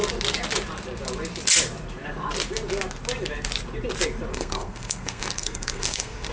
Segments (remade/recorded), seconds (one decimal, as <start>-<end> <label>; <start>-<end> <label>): 0.0-4.3 recorded; 4.3-6.3 remade